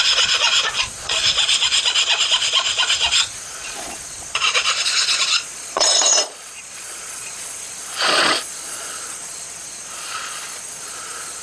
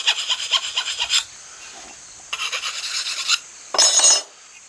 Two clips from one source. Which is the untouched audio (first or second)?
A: second